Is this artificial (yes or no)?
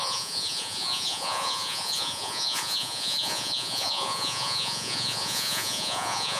yes